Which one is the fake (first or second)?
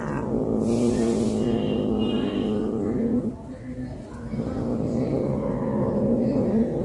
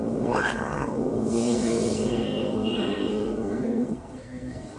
second